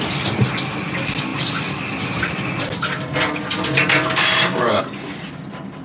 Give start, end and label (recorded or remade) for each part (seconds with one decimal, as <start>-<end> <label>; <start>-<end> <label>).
0.0-5.8 recorded